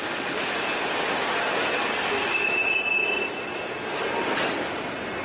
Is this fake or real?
real